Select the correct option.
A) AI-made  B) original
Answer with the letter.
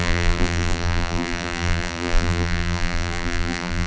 A